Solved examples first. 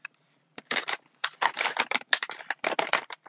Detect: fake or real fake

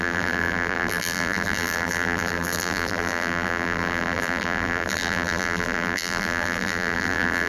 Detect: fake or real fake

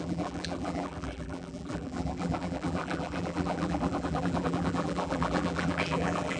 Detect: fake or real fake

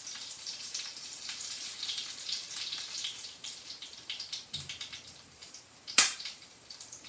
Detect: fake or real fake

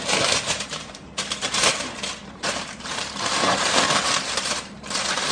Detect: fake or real fake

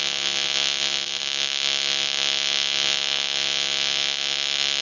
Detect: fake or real real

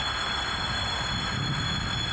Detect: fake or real real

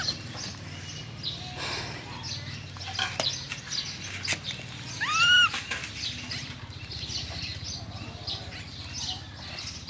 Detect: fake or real real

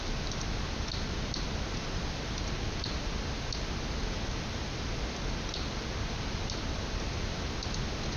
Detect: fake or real real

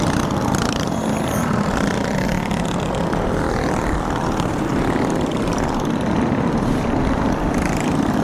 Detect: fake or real fake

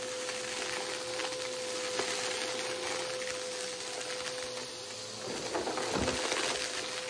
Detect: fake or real real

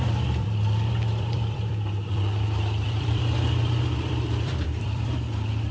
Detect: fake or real fake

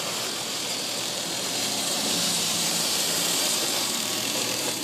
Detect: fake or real fake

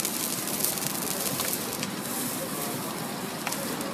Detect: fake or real fake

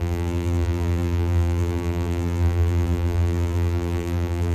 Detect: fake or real fake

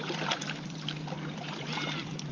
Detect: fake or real fake